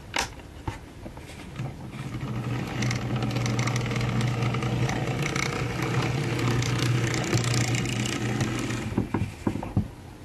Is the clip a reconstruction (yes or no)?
no